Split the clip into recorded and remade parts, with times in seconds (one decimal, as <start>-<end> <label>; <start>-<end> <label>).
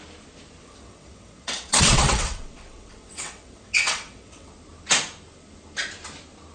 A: 0.0-0.6 recorded; 0.6-4.5 remade; 4.5-6.5 recorded